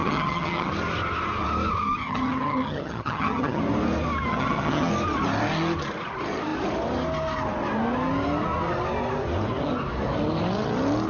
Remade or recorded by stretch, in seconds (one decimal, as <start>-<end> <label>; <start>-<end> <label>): 0.0-0.7 remade; 0.7-2.0 recorded; 2.0-3.6 remade; 3.6-4.3 recorded; 4.3-4.9 remade; 4.9-11.1 recorded